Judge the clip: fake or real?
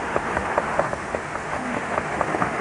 fake